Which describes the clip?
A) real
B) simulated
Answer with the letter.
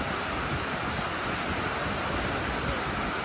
A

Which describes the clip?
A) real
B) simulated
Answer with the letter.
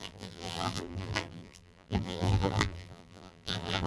B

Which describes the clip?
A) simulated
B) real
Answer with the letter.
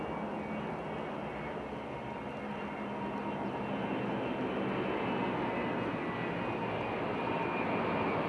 B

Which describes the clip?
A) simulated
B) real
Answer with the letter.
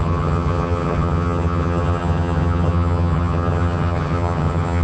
A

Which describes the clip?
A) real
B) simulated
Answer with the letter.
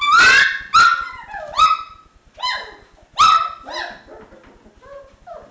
A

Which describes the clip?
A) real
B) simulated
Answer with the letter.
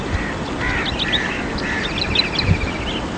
A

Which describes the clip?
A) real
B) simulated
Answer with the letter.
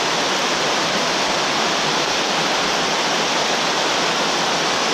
A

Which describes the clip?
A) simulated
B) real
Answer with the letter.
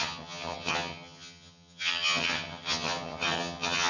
A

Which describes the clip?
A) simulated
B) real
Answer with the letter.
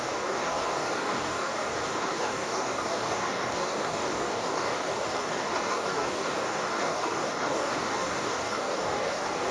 A